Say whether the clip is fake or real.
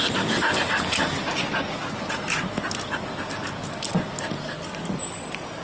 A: real